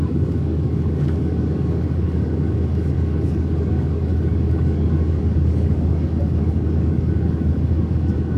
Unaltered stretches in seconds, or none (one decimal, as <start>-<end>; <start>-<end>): none